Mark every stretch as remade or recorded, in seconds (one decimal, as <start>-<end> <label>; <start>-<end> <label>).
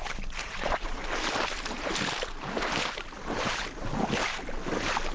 0.0-0.4 recorded; 0.4-1.0 remade; 1.0-5.1 recorded